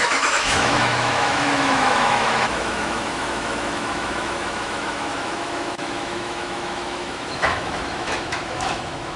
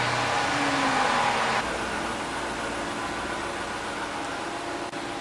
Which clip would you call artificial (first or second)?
first